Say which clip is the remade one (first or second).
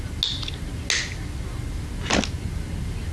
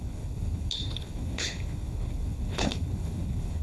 second